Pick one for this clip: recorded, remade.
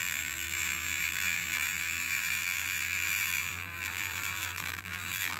remade